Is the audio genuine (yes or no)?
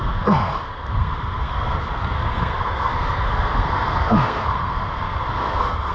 no